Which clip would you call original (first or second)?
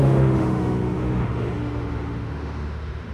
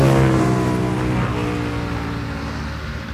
second